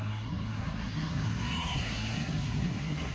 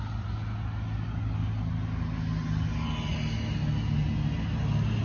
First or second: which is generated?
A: first